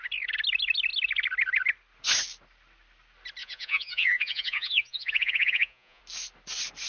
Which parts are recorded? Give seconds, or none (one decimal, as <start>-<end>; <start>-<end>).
0.0-3.4; 6.0-6.9